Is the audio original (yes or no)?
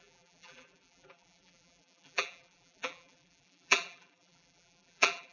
no